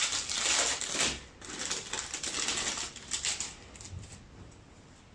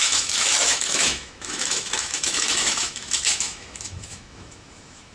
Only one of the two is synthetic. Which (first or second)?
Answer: second